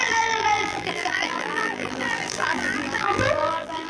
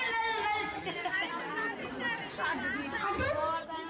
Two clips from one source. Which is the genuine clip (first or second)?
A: second